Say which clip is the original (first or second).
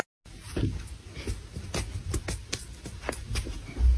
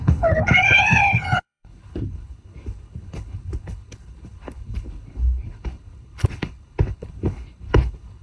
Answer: first